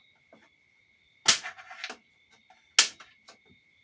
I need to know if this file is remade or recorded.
recorded